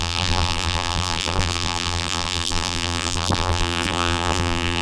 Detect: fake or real fake